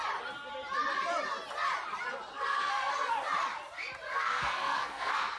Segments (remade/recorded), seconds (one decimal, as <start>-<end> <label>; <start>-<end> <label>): 0.0-2.3 recorded; 2.3-2.9 remade; 2.9-4.1 recorded; 4.1-5.4 remade